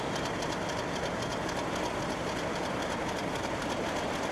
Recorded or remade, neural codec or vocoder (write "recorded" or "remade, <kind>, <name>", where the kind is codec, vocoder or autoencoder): remade, vocoder, BigVGAN v2